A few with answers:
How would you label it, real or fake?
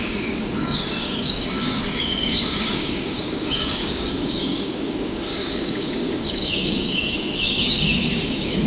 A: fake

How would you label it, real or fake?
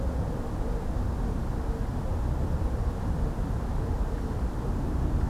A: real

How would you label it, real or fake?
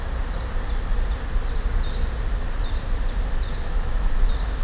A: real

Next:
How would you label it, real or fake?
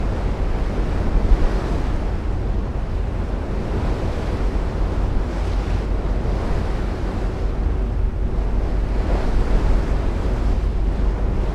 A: real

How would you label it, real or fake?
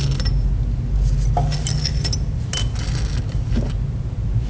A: real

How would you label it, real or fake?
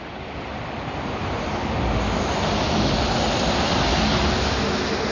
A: real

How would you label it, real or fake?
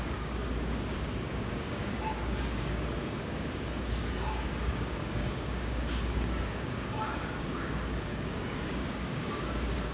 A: fake